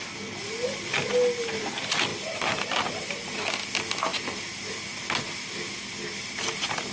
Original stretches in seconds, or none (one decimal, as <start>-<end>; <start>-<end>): 0.0-4.1; 4.7-6.9